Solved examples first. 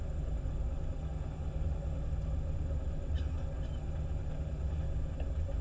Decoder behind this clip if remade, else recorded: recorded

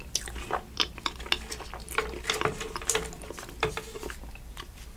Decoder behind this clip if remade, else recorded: recorded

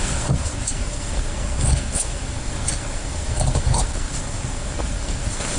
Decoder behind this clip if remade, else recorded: remade, codec, SNAC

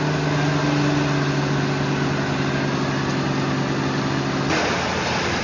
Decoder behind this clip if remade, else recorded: recorded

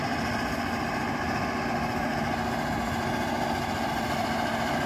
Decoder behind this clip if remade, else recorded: recorded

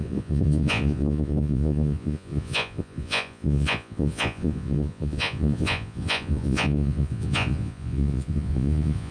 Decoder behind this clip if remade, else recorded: remade, vocoder, Vocos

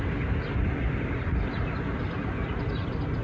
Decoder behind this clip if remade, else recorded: recorded